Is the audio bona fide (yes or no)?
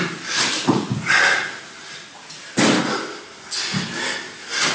yes